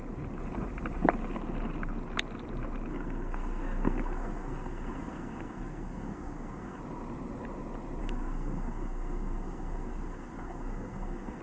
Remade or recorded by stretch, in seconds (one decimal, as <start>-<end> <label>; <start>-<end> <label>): 0.0-2.9 recorded; 2.9-6.8 remade; 6.8-8.0 recorded; 8.0-11.4 remade